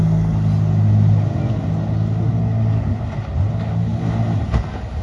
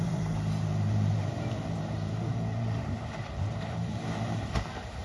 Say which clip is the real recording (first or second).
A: first